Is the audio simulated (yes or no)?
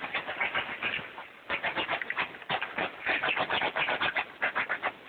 no